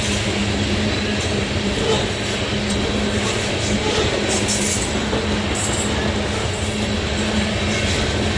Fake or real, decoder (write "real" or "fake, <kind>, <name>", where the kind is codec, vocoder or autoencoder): real